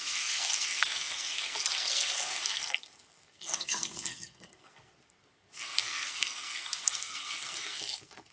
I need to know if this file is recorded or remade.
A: remade